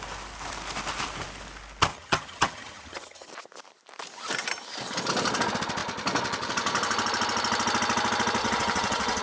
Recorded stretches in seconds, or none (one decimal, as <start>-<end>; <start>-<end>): 0.0-1.9; 3.3-8.4